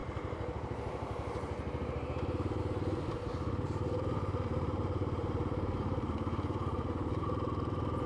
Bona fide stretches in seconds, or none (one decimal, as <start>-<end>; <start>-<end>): 2.6-3.3; 6.9-8.1